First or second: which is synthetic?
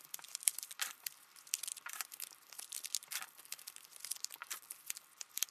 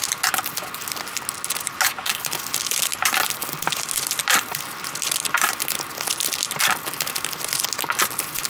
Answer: first